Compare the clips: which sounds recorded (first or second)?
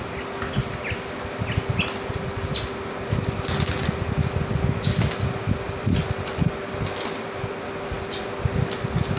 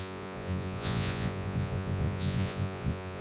first